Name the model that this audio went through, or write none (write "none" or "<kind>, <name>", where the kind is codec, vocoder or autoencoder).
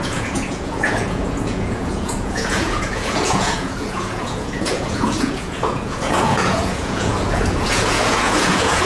vocoder, Vocos